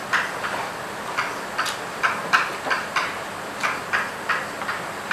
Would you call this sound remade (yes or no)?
no